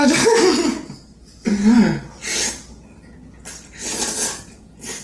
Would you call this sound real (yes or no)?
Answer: yes